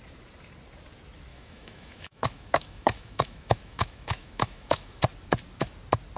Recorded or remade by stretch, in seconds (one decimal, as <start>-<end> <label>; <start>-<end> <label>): 0.0-1.3 recorded; 1.3-5.0 remade; 5.0-6.2 recorded

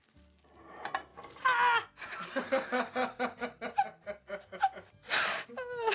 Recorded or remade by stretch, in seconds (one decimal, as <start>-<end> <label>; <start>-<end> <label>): 0.0-5.9 recorded

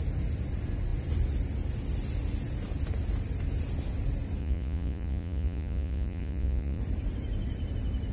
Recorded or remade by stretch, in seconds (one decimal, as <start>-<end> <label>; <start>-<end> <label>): 0.0-4.4 recorded; 4.4-6.8 remade; 6.8-8.1 recorded

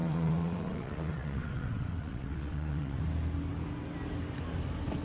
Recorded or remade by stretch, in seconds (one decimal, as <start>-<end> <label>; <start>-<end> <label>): 0.0-3.0 remade; 3.0-5.0 recorded

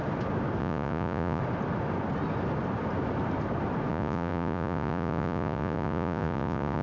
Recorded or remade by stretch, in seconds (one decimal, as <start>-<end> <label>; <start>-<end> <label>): 0.0-0.6 recorded; 0.6-1.4 remade; 1.4-3.9 recorded; 3.9-6.8 remade